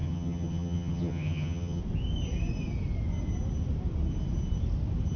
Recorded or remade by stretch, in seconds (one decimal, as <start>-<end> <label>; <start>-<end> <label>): 0.0-1.8 remade; 1.8-5.2 recorded